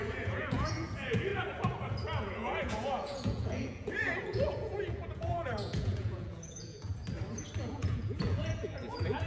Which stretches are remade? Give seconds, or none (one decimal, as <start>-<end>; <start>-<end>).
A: 0.0-1.3; 2.2-6.9; 7.6-9.3

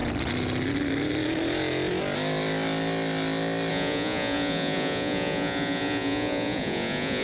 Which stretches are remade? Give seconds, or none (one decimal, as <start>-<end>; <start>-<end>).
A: 3.7-7.2

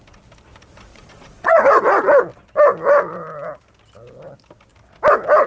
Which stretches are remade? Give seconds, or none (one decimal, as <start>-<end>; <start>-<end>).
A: 0.9-1.6

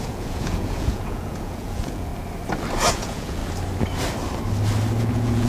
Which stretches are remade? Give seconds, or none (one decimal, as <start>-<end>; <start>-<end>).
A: 0.0-2.1; 2.9-3.4; 5.0-5.5